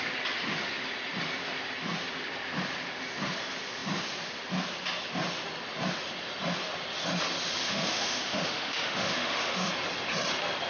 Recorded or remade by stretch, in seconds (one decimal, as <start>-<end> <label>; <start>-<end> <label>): 0.0-7.6 recorded; 7.6-9.7 remade; 9.7-10.7 recorded